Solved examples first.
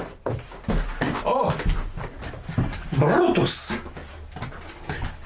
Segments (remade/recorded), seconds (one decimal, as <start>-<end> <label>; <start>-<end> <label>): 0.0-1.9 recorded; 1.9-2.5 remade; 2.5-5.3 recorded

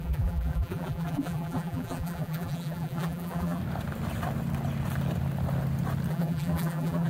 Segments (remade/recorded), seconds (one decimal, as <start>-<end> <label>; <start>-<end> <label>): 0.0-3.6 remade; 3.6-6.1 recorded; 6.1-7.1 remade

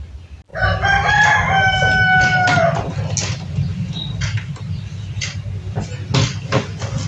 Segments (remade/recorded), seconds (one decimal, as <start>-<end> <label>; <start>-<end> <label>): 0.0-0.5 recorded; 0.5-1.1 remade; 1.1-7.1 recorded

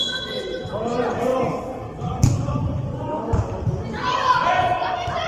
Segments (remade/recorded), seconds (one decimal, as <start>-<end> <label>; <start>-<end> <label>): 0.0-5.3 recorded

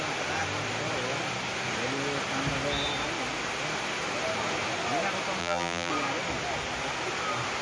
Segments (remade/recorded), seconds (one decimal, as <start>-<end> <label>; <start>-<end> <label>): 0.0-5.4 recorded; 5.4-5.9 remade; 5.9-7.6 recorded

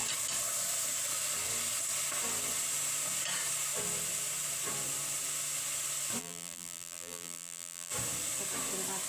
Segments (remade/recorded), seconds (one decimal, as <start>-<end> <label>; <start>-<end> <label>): 0.0-6.2 recorded; 6.2-7.9 remade; 7.9-9.1 recorded

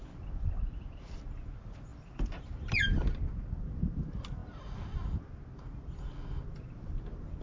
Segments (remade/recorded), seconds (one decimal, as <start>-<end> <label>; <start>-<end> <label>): 0.0-7.4 recorded